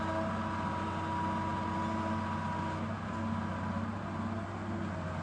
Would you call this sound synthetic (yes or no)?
no